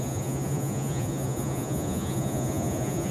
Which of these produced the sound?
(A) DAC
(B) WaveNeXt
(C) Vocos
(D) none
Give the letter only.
C